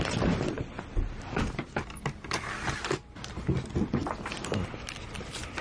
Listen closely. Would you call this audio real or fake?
real